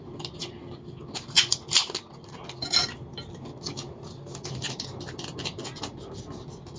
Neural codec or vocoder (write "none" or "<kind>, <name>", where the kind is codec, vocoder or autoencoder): none